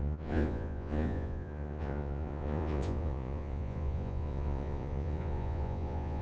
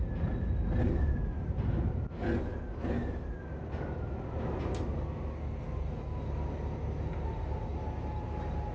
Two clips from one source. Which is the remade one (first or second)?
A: first